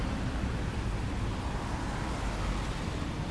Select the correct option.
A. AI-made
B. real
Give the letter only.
B